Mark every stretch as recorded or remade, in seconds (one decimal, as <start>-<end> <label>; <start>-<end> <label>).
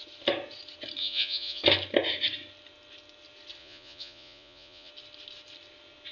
0.0-1.0 recorded; 1.0-1.6 remade; 1.6-3.6 recorded; 3.6-4.9 remade; 4.9-6.1 recorded